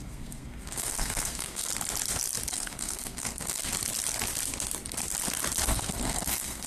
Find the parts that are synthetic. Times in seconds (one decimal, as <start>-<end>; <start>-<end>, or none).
0.0-1.7; 2.5-3.7; 5.6-6.7